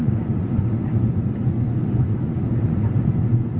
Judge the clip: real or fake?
fake